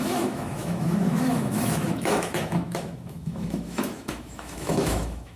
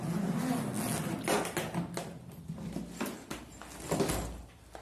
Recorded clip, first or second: second